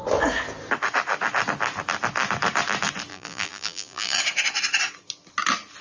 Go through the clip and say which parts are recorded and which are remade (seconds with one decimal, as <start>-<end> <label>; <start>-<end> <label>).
0.0-3.1 recorded; 3.1-4.2 remade; 4.2-5.8 recorded